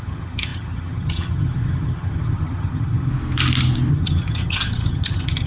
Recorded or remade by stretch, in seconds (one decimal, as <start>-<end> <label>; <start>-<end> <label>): 0.0-3.1 remade; 3.1-3.9 recorded; 3.9-5.5 remade